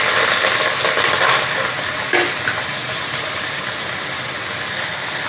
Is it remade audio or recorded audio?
recorded